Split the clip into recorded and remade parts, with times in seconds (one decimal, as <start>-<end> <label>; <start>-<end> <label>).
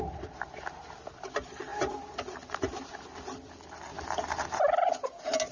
0.0-1.7 recorded; 1.7-2.9 remade; 2.9-3.9 recorded; 3.9-4.6 remade; 4.6-5.5 recorded